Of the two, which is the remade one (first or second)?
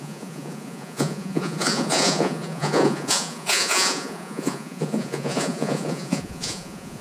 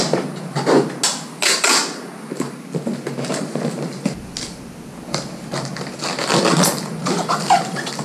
first